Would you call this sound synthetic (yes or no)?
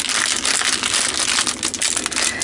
no